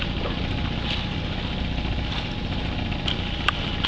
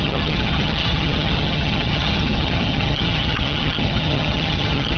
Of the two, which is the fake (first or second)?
second